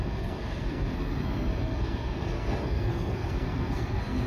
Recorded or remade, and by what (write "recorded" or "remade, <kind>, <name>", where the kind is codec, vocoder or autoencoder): remade, codec, SNAC